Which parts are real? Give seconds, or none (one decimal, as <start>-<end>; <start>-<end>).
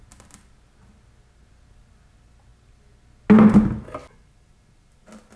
0.0-5.4